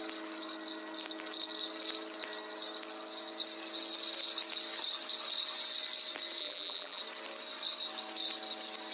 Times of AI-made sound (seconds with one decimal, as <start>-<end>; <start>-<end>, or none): 6.4-7.0